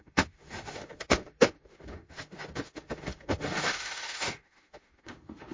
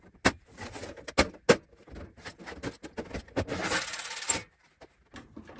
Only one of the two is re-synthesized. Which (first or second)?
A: first